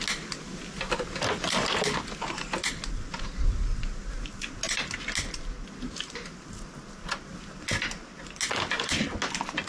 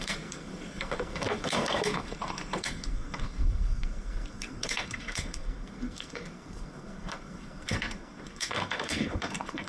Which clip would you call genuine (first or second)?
first